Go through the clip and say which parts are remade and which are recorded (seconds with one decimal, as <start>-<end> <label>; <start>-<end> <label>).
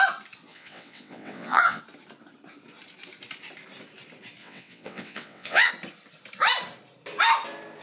0.0-0.5 recorded; 0.5-1.8 remade; 1.8-4.4 recorded; 4.4-5.7 remade; 5.7-7.8 recorded